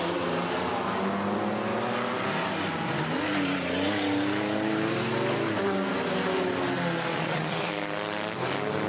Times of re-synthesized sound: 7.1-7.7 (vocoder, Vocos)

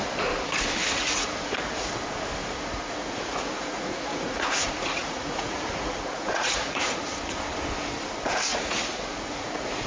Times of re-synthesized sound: 0.8-1.9 (vocoder, Vocos); 2.4-7.0; 8.5-9.9

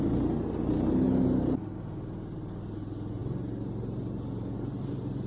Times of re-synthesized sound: none

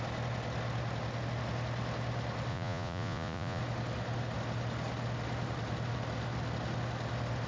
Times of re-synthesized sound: 2.5-3.6 (vocoder, Vocos)

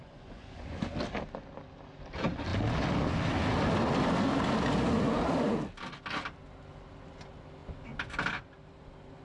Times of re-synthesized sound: 0.0-0.8 (vocoder, Vocos)

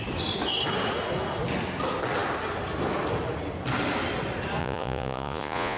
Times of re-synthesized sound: 4.6-5.8 (vocoder, Vocos)